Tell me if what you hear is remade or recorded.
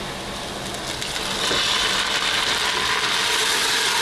recorded